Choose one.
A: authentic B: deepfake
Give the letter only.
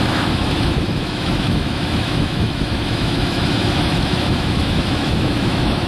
B